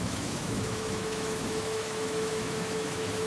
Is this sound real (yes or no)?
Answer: no